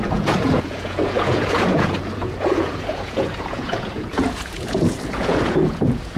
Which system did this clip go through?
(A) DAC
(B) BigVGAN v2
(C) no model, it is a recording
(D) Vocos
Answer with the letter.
D